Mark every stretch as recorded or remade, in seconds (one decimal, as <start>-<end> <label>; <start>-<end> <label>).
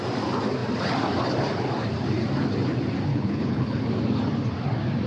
0.0-3.1 recorded; 3.1-3.8 remade; 3.8-5.1 recorded